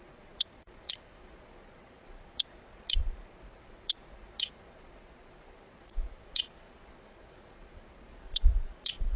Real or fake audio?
fake